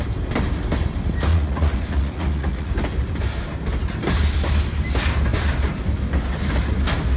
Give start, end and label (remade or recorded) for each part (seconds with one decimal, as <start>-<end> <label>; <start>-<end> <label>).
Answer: 0.0-1.3 recorded; 1.3-2.7 remade; 2.7-7.2 recorded

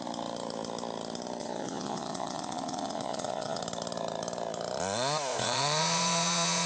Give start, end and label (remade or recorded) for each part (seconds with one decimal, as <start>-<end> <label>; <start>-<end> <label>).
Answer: 0.0-1.4 recorded; 1.4-3.6 remade; 3.6-5.3 recorded; 5.3-6.7 remade

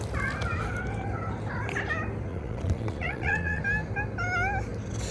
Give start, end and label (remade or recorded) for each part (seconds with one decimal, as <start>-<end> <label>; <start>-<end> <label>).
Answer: 0.0-2.3 recorded; 2.3-3.6 remade; 3.6-5.1 recorded